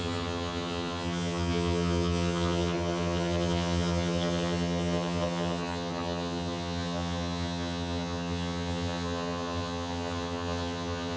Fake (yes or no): yes